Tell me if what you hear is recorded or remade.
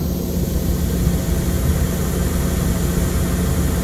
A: recorded